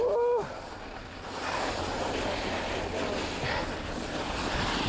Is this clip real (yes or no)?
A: yes